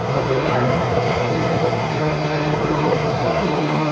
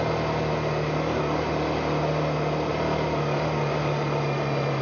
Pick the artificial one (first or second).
first